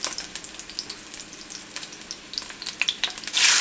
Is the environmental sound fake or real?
real